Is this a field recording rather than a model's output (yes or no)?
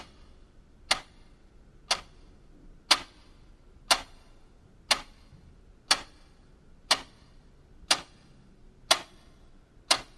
yes